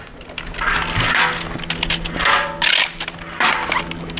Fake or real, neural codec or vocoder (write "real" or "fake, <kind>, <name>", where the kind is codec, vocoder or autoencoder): real